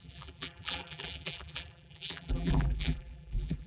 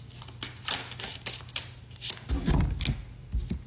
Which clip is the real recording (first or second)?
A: second